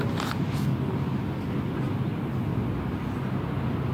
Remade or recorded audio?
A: recorded